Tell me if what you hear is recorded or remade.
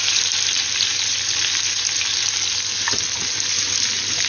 recorded